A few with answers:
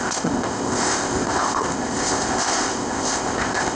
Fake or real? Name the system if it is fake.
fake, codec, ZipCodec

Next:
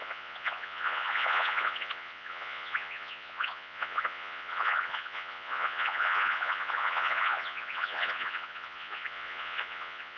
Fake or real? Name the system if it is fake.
fake, vocoder, Vocos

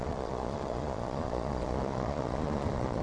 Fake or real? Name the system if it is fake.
fake, vocoder, Vocos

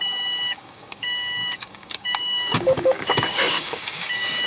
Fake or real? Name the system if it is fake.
fake, codec, DAC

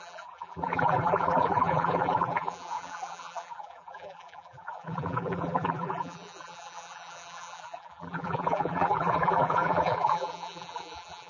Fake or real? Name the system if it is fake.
fake, vocoder, BigVGAN v2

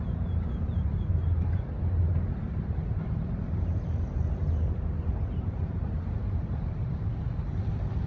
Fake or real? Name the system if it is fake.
fake, vocoder, BigVGAN v2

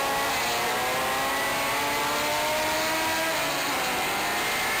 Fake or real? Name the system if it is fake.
real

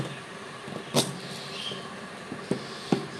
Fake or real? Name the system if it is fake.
real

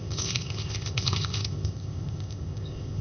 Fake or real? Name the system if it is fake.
fake, codec, ZipCodec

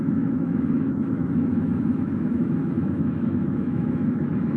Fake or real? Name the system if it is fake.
fake, autoencoder, DAC-VAE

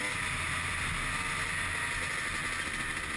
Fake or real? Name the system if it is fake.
real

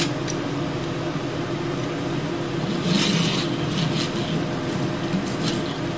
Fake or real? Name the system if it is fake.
real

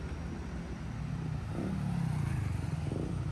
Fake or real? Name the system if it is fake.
real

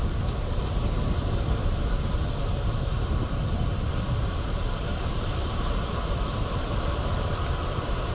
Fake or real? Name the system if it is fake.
fake, vocoder, BigVGAN v2